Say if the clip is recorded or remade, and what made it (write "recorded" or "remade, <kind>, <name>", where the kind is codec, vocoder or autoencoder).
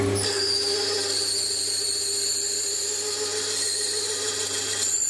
recorded